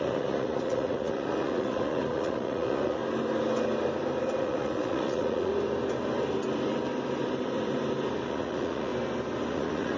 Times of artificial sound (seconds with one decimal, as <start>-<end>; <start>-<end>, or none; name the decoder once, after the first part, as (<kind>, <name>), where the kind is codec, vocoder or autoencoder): 0.0-3.0 (vocoder, Vocos); 4.4-5.5; 8.3-8.9; 9.5-10.0